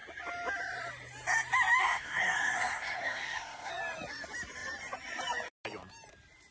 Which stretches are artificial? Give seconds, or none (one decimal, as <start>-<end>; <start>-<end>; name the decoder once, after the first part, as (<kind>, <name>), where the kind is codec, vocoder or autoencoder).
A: 1.8-3.7 (codec, SNAC)